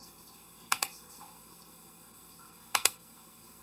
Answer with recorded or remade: remade